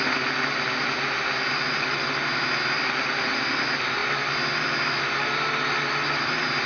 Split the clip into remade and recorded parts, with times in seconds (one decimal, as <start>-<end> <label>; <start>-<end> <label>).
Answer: 0.0-6.7 recorded